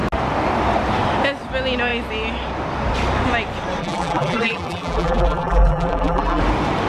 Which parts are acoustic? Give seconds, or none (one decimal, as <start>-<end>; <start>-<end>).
0.0-3.8; 6.4-6.9